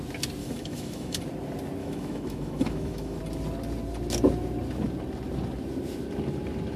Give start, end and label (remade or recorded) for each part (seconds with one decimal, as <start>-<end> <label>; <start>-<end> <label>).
0.0-0.4 recorded; 0.4-1.2 remade; 1.2-1.8 recorded; 1.8-3.2 remade; 3.2-6.8 recorded